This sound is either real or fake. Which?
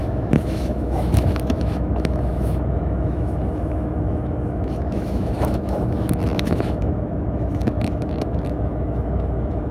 fake